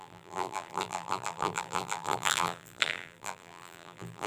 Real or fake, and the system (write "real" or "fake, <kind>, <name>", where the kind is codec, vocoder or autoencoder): fake, vocoder, BigVGAN v2